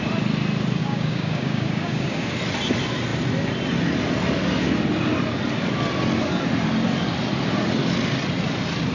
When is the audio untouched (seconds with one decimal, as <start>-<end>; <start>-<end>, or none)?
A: 0.0-0.8; 2.3-8.9